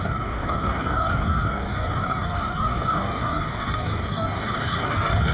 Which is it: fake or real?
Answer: fake